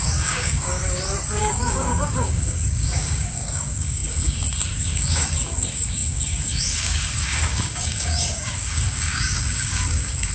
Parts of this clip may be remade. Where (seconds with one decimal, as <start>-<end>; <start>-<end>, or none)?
0.0-0.8; 1.4-10.3